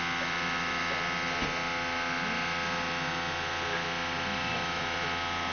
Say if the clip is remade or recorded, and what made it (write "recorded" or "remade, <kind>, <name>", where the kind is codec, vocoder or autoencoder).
recorded